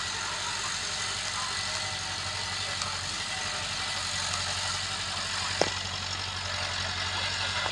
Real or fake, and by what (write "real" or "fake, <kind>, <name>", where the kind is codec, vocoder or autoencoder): real